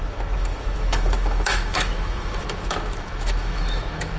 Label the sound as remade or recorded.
remade